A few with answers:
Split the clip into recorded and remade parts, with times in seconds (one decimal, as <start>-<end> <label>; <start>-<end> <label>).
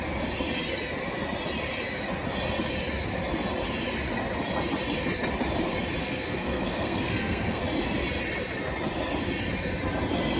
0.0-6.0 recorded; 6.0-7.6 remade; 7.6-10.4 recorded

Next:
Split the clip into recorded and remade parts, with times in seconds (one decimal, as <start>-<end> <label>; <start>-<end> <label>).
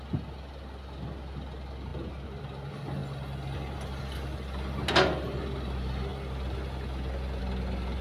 0.0-8.0 recorded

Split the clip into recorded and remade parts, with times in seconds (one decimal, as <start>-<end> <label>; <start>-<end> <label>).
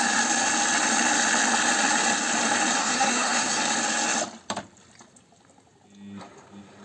0.0-2.8 recorded; 2.8-3.6 remade; 3.6-6.8 recorded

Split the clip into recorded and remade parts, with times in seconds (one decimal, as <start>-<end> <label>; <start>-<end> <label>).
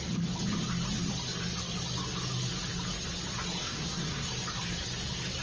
0.0-3.6 recorded; 3.6-4.3 remade; 4.3-5.4 recorded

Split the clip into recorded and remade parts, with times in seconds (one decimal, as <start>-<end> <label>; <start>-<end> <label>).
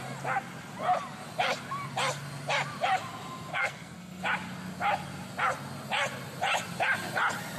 0.0-3.5 recorded; 3.5-4.2 remade; 4.2-7.6 recorded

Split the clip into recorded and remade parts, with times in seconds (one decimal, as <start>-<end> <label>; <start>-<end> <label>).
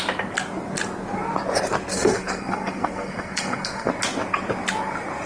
0.0-1.9 recorded; 1.9-3.9 remade; 3.9-5.3 recorded